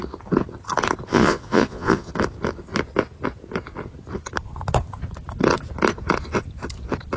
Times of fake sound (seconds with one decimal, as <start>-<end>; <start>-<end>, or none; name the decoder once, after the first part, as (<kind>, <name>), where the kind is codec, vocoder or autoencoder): 1.1-2.1 (vocoder, Vocos)